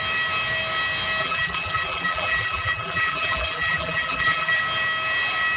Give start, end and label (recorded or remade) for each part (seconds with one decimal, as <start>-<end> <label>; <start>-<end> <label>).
0.0-1.2 recorded; 1.2-4.6 remade; 4.6-5.6 recorded